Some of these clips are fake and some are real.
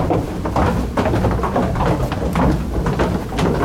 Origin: real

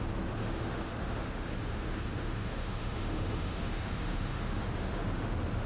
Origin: fake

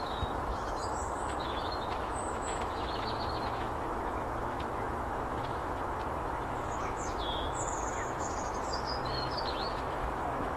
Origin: fake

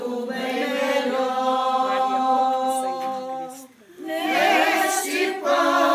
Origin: real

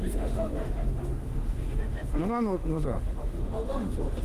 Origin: fake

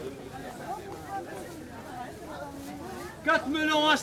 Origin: real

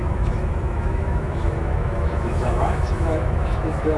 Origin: fake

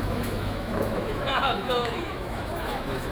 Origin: fake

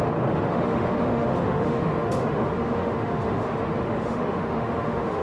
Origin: fake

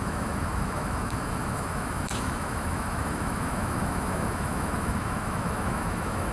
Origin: fake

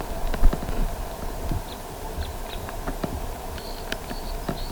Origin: real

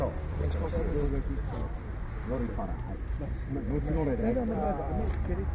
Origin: real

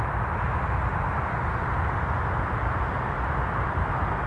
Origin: real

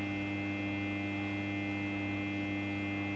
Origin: real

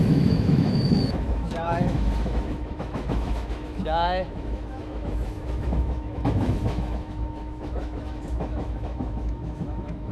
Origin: fake